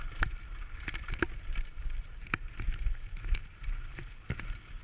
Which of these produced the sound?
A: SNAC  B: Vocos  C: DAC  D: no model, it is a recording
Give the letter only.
D